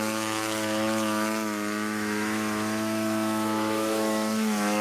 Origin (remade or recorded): remade